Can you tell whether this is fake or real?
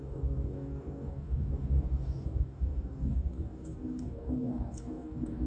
fake